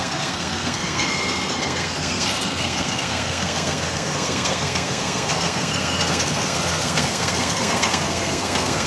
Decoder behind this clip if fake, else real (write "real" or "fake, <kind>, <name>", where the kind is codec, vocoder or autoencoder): fake, codec, SNAC